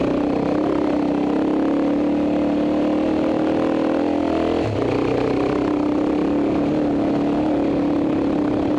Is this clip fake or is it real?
real